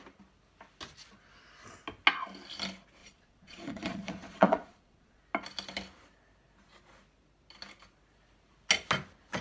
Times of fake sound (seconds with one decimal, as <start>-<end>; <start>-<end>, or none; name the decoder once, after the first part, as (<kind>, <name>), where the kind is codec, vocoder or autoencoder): 3.0-5.2 (vocoder, Vocos)